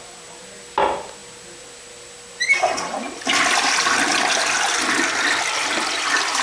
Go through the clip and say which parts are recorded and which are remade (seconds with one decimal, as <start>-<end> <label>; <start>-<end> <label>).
0.0-6.4 recorded